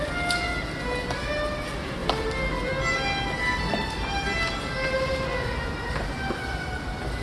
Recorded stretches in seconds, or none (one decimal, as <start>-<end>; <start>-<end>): 0.0-7.2